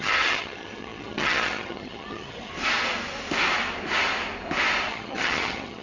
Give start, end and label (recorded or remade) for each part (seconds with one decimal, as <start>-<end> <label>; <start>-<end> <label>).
0.0-2.5 remade; 2.5-4.9 recorded; 4.9-5.8 remade